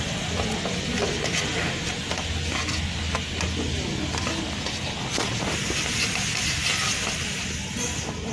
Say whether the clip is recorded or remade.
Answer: recorded